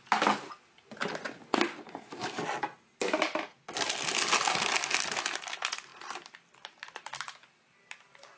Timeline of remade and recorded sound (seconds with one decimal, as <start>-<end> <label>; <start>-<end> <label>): 0.0-8.4 recorded